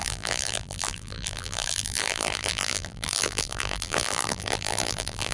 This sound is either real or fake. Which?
fake